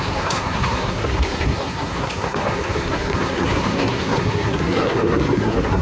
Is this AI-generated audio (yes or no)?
yes